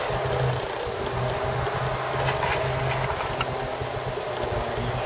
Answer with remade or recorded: recorded